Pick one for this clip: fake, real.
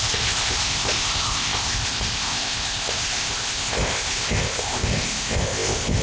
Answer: fake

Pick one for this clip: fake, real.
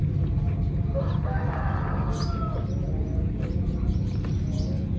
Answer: real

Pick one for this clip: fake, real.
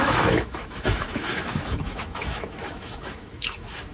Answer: fake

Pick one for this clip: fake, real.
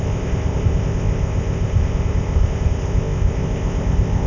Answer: fake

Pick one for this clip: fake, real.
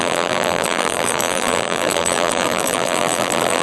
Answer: fake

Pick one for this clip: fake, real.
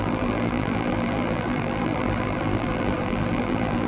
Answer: fake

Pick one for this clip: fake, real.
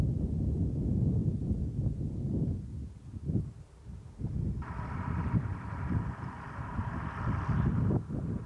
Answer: real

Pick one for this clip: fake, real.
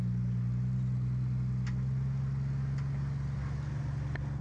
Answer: real